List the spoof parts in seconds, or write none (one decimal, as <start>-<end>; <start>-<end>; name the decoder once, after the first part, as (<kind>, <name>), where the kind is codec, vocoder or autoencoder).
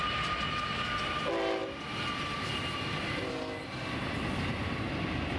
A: none